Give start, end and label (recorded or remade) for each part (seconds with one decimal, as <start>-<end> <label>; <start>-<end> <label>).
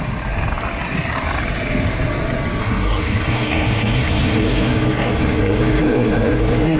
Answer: 0.0-2.6 recorded; 2.6-6.8 remade